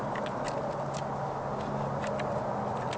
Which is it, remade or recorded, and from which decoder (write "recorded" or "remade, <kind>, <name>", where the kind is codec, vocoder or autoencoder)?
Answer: recorded